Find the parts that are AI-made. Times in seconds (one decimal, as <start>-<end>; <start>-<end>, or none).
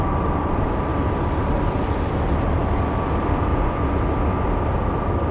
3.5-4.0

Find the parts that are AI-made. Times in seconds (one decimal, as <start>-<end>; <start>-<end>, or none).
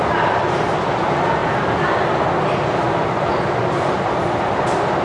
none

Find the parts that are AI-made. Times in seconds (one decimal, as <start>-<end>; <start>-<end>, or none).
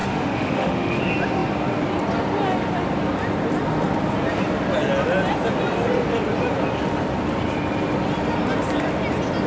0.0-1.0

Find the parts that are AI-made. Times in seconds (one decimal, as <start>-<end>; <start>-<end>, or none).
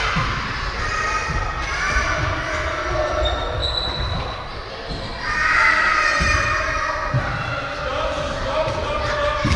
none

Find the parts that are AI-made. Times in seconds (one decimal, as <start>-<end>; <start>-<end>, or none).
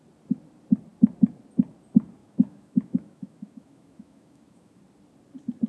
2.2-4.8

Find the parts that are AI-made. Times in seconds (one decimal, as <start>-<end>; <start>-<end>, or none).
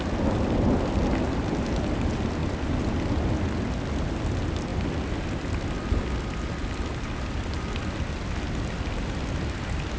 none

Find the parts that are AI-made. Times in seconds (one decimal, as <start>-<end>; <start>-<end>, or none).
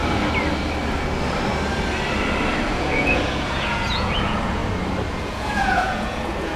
2.8-4.6; 5.1-6.6